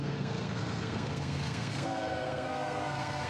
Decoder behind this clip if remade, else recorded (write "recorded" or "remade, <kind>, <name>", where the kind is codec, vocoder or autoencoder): remade, codec, SNAC